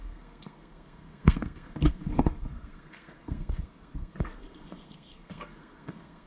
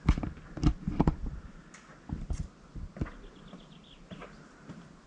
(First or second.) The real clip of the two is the second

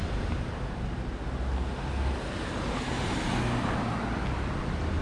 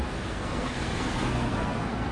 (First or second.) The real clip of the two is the first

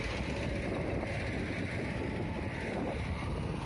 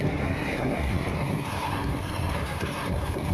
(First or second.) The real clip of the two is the first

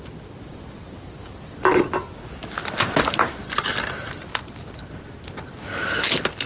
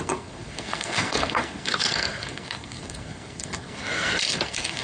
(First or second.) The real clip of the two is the first